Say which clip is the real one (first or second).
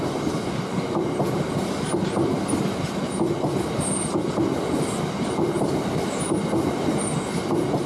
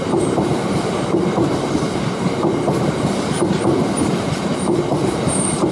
first